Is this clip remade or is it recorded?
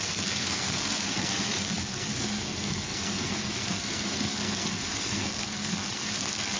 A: remade